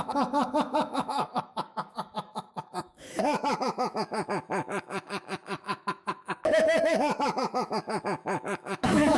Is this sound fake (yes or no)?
yes